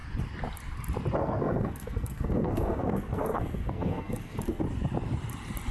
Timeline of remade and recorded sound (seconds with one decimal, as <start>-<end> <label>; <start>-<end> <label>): 0.0-1.2 recorded; 1.2-4.6 remade; 4.6-5.7 recorded